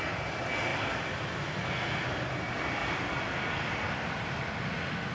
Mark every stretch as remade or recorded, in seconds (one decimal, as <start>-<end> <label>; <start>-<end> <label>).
0.0-5.1 recorded